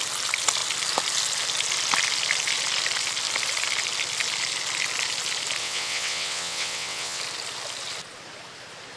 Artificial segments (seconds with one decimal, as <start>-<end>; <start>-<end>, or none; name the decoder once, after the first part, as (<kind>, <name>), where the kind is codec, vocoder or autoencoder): 5.6-7.2 (vocoder, WaveNeXt)